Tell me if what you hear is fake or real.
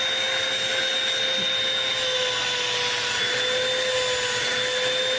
real